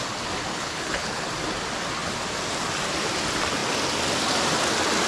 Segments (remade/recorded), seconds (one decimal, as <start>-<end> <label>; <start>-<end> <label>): 0.0-0.5 recorded; 0.5-1.2 remade; 1.2-5.1 recorded